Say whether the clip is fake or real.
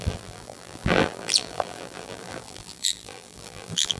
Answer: fake